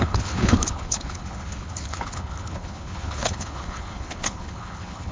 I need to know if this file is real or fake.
fake